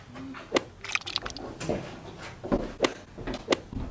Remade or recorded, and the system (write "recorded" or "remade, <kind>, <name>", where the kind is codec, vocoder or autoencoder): recorded